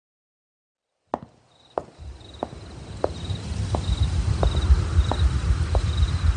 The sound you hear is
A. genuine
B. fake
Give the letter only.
A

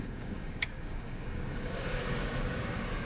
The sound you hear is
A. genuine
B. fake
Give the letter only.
B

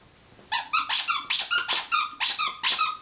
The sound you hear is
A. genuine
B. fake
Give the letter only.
A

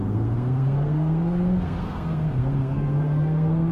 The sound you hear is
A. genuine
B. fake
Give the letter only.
B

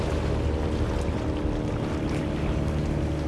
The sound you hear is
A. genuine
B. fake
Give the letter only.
A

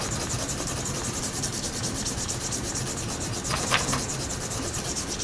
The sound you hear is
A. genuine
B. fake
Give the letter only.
B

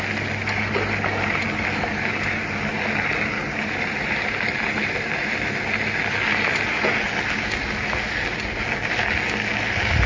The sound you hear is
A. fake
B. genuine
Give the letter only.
B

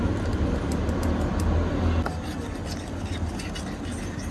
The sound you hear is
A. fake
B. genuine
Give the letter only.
B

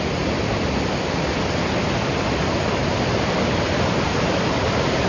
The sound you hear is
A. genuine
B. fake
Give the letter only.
A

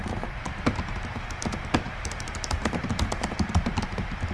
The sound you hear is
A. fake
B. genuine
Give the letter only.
A